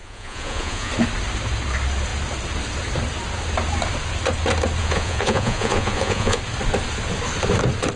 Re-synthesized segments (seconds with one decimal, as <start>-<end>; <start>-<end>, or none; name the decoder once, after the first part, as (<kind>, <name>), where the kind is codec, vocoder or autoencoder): 0.0-0.9 (vocoder, Vocos); 4.8-6.4

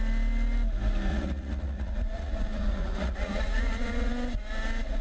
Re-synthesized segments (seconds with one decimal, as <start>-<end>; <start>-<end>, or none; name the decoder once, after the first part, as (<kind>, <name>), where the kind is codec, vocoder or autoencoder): 1.1-4.1 (vocoder, Vocos)